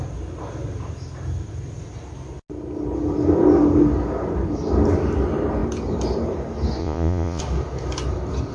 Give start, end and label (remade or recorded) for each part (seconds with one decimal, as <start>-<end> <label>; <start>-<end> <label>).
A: 0.0-6.8 recorded; 6.8-7.4 remade; 7.4-8.5 recorded